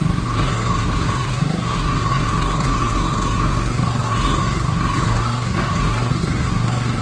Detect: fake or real fake